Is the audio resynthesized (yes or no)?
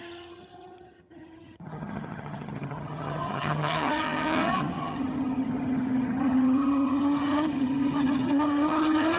yes